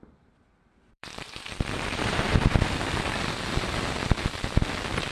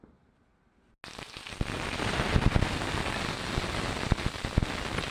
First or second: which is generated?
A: first